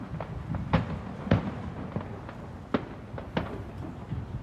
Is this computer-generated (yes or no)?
no